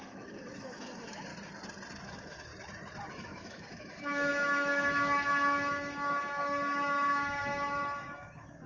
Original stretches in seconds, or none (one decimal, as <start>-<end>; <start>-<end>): 1.3-2.1; 2.5-3.1